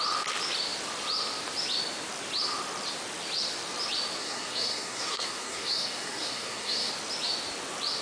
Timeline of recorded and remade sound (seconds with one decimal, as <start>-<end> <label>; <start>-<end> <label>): 0.0-4.2 recorded; 4.2-6.9 remade; 6.9-8.0 recorded